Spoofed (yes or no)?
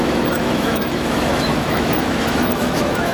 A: yes